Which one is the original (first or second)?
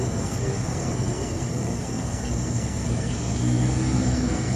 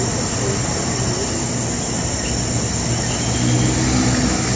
second